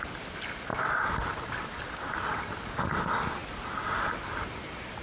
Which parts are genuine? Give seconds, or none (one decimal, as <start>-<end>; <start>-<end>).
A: 0.0-3.4; 4.4-5.0